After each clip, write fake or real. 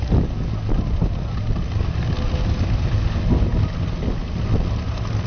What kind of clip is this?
real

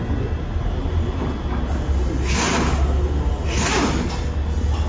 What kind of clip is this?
real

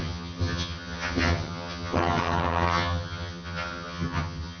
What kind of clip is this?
fake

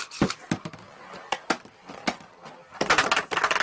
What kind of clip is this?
real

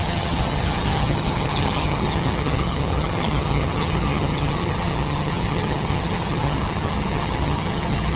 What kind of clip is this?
fake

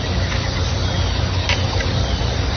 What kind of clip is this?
real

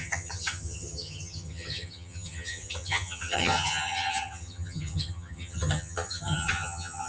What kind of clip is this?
fake